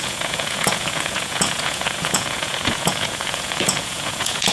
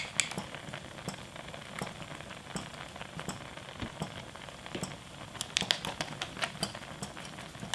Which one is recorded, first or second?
second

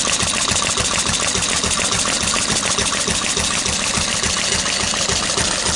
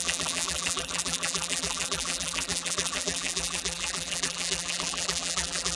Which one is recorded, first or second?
first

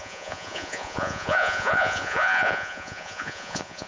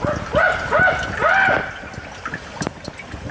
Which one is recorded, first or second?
second